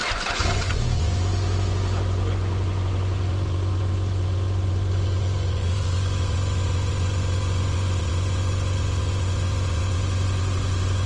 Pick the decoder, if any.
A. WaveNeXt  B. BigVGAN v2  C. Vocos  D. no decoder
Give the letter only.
C